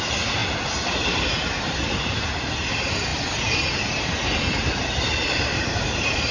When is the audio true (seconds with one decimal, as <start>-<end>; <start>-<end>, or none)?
0.4-0.9